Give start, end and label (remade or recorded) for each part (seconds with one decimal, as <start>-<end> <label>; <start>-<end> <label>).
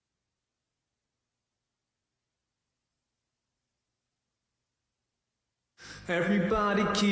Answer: 0.0-2.6 recorded; 2.6-6.3 remade; 6.3-7.1 recorded